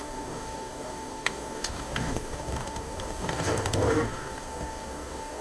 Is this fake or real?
fake